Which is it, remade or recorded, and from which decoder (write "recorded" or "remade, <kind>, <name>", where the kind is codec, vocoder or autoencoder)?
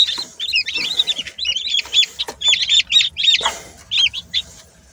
recorded